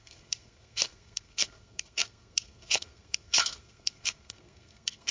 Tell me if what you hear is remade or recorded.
remade